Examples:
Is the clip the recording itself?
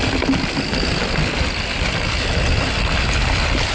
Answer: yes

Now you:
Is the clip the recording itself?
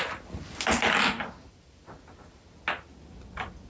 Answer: yes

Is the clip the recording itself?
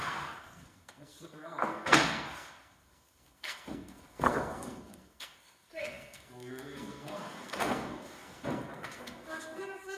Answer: no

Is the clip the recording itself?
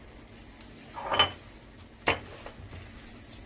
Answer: yes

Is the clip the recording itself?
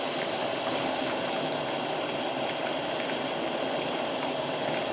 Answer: yes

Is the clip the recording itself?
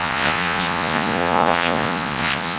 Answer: no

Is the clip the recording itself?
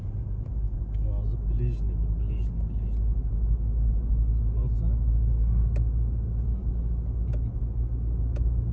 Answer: yes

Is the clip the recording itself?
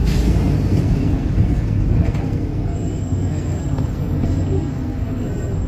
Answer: no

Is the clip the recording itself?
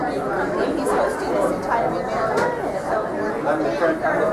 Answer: yes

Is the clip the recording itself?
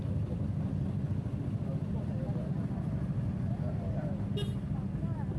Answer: yes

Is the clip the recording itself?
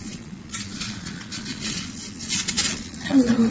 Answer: no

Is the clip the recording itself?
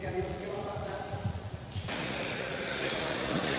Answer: no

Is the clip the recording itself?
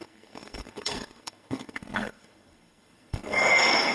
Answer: no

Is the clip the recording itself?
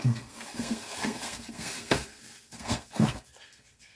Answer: no